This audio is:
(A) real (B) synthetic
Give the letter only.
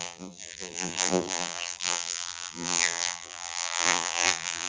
B